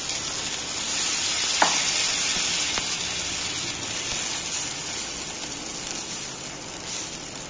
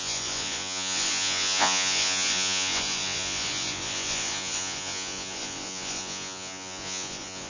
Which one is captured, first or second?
first